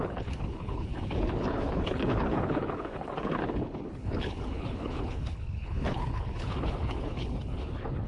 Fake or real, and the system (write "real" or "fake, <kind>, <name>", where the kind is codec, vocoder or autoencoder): fake, codec, HILCodec